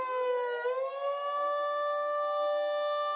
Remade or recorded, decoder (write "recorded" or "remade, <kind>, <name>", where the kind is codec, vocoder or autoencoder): recorded